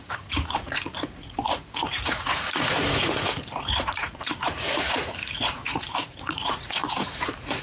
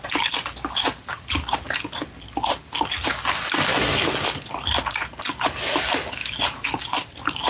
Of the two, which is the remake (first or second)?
first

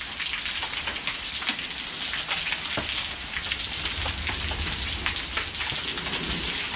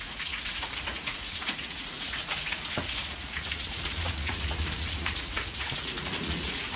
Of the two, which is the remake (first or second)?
second